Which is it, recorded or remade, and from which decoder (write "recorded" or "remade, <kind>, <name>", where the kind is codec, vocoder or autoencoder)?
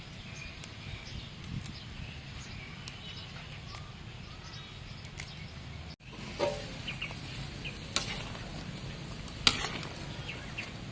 recorded